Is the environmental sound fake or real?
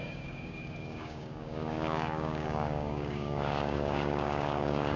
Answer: fake